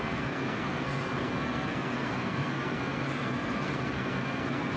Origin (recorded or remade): remade